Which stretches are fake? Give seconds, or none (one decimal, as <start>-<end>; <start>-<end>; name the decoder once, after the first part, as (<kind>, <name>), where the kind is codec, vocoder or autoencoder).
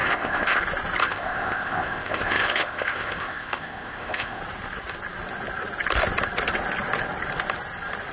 0.0-0.6 (codec, ZipCodec); 1.0-4.4